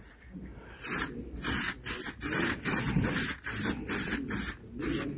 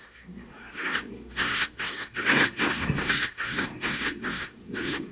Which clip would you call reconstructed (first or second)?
second